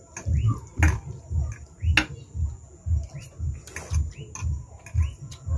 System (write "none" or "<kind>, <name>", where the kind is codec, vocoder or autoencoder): none